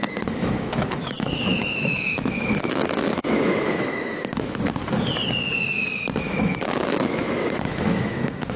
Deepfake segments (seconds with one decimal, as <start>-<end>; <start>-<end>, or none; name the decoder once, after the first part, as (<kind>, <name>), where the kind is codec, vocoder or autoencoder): 0.0-4.8 (autoencoder, DAC-VAE); 6.2-8.6